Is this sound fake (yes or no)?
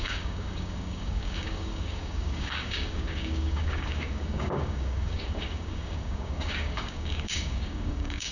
yes